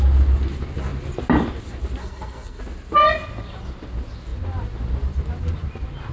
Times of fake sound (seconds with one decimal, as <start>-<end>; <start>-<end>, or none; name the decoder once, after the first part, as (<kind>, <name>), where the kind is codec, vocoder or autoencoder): 2.0-2.6 (codec, SNAC)